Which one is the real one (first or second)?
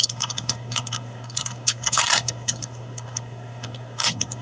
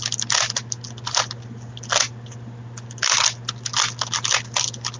second